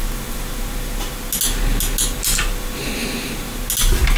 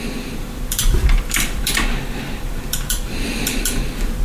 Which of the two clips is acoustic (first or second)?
first